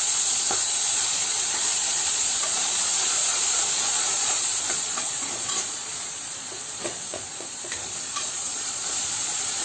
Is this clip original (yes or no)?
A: no